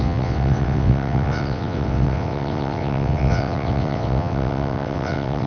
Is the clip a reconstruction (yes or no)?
yes